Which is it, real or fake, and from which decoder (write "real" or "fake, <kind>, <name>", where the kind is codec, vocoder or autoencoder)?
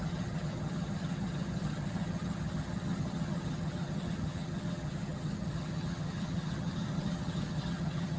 fake, vocoder, HiFi-GAN